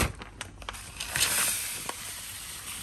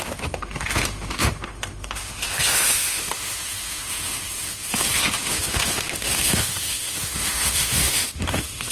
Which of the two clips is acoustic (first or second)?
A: first